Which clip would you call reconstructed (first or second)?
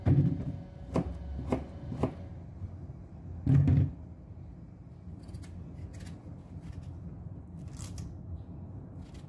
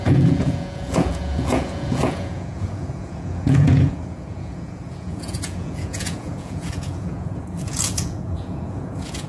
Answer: second